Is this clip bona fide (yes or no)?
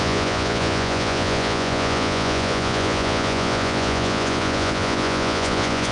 no